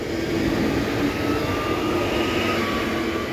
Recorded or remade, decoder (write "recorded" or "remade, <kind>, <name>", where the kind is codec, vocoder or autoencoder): recorded